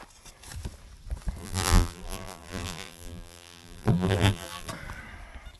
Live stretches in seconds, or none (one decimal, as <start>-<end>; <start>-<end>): 0.0-1.4; 4.7-5.6